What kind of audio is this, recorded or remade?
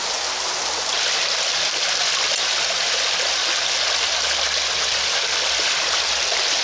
recorded